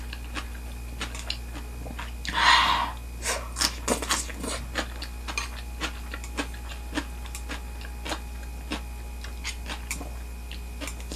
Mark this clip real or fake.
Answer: real